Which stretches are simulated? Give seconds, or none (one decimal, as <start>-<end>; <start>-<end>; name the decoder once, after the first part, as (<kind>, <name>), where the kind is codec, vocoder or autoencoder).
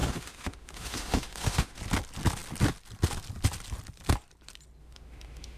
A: 0.0-1.8 (autoencoder, DAC-VAE); 4.8-5.6